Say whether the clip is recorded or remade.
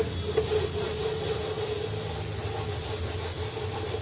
recorded